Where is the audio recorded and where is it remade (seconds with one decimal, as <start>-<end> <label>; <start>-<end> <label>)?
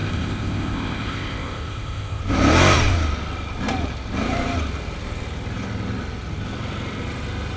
0.0-2.2 remade; 2.2-7.6 recorded